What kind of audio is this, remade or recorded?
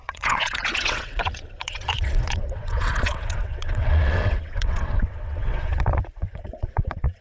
remade